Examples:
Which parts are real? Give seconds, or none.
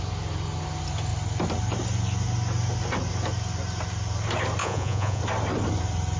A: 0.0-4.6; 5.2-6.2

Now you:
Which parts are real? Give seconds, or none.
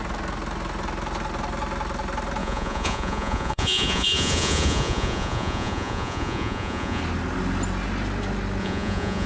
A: 0.0-2.4; 7.0-8.6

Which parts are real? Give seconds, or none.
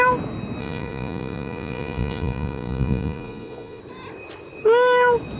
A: 0.0-0.6; 3.8-5.4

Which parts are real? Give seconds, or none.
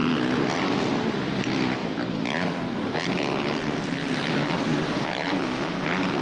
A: 0.0-6.2